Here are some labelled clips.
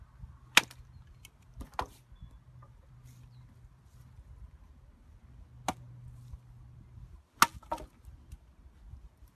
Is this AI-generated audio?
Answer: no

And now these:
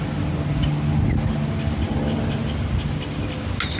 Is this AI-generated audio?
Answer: no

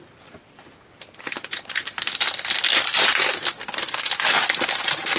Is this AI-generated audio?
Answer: no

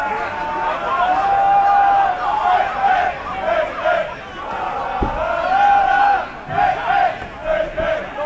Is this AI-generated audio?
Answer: no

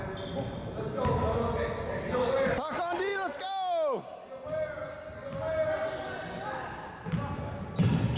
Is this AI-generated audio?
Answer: no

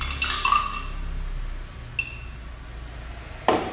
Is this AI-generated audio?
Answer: no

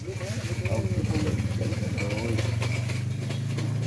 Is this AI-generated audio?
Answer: no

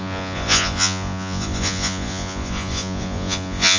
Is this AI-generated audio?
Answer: yes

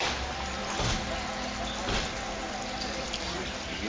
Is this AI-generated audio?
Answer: no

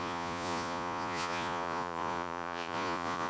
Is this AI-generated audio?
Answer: yes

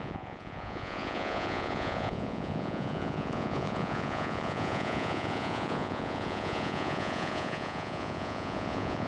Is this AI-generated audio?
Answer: yes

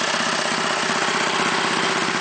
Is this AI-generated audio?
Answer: no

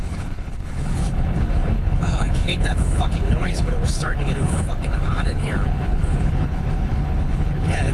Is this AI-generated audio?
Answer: yes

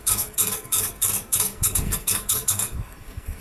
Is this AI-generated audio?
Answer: yes